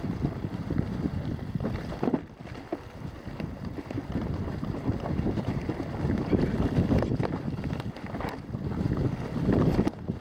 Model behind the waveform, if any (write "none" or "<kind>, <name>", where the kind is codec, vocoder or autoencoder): none